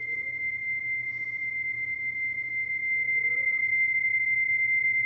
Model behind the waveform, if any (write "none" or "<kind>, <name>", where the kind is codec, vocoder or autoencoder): none